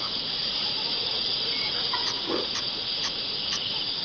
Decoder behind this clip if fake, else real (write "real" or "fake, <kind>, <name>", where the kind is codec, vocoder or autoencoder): fake, vocoder, Vocos